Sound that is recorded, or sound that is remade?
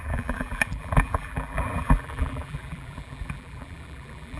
remade